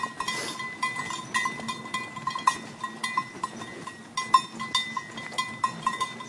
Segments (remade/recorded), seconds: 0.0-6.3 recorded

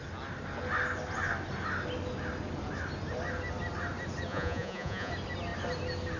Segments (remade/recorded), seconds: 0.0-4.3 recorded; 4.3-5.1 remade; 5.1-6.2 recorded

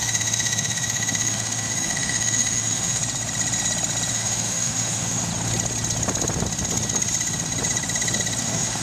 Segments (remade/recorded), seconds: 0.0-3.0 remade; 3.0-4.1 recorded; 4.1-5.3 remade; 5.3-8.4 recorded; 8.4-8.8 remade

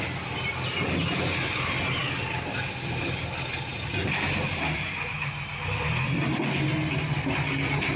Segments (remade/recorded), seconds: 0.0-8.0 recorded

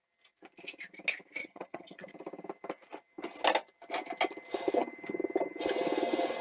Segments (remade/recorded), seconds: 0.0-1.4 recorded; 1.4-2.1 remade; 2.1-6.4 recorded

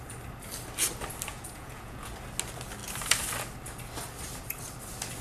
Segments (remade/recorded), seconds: 0.0-1.3 recorded; 1.3-2.1 remade; 2.1-5.2 recorded

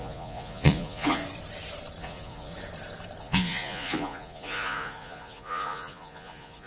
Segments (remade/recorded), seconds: 0.0-1.2 remade; 1.2-2.0 recorded; 2.0-2.5 remade; 2.5-3.2 recorded; 3.2-6.7 remade

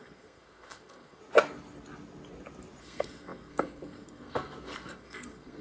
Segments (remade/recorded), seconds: 0.0-1.2 remade; 1.2-2.8 recorded; 2.8-5.6 remade